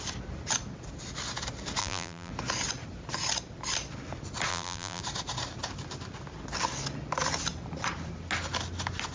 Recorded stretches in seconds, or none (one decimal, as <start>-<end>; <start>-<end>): 0.0-1.8; 2.3-4.5; 5.0-9.1

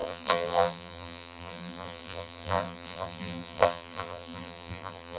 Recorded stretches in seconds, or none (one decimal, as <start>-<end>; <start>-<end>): none

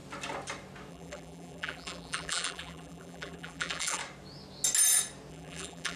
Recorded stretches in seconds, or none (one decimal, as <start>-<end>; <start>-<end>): 0.0-0.9; 4.0-5.3